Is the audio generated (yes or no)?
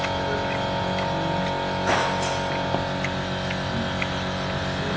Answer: no